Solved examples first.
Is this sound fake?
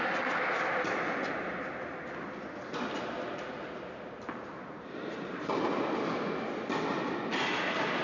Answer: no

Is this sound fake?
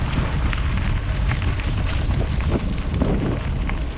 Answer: no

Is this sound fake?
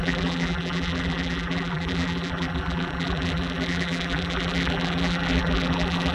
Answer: yes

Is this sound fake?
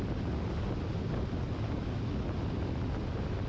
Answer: no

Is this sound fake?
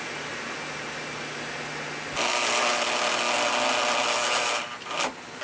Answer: no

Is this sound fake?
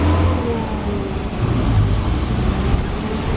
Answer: no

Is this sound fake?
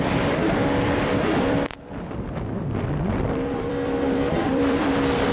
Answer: yes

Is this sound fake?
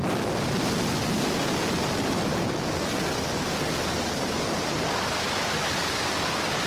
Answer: no